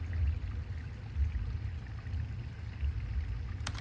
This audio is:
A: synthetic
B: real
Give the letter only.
B